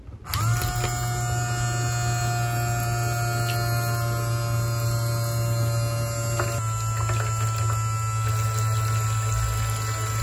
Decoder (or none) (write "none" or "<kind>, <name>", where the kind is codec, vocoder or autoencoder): none